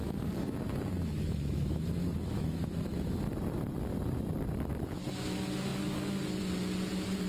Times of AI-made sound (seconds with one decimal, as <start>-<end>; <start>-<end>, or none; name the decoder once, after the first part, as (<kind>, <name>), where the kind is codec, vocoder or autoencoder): 0.0-3.1 (autoencoder, DAC-VAE)